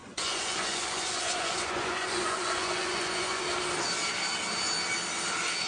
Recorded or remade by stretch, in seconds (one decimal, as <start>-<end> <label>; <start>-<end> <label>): 0.0-3.4 remade; 3.4-5.7 recorded